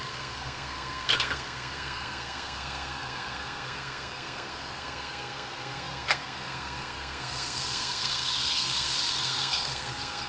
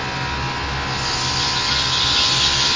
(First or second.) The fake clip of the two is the first